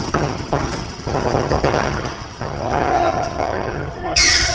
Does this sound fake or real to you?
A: fake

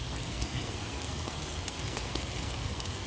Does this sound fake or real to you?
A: fake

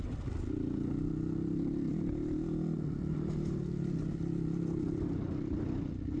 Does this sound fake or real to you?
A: real